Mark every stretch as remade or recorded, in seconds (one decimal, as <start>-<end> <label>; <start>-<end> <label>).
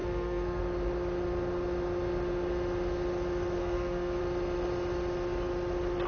0.0-0.6 remade; 0.6-3.6 recorded; 3.6-4.2 remade; 4.2-6.1 recorded